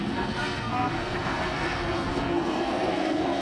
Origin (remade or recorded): remade